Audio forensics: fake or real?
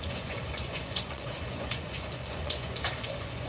fake